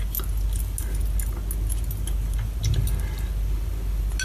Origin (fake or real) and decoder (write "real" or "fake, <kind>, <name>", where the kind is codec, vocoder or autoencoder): real